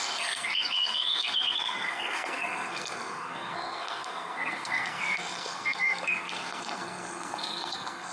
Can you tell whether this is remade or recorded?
remade